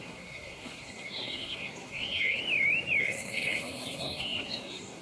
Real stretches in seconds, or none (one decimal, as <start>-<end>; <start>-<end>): 2.4-3.0